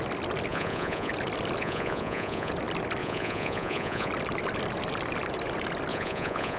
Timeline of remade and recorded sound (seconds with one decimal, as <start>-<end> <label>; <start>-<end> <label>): 0.0-0.5 recorded; 0.5-1.1 remade; 1.1-1.6 recorded; 1.6-2.5 remade; 2.5-3.0 recorded; 3.0-4.1 remade; 4.1-5.9 recorded; 5.9-6.6 remade